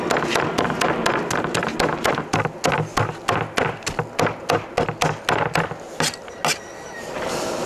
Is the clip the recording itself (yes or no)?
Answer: yes